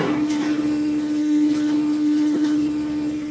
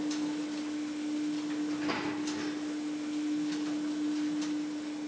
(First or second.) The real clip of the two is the second